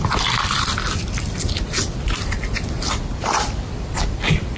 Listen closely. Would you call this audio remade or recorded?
remade